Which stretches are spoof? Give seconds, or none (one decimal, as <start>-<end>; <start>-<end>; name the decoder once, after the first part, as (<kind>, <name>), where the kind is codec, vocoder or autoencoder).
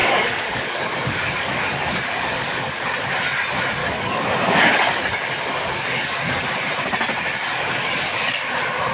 0.0-2.8 (codec, DAC); 3.8-6.4; 7.5-8.3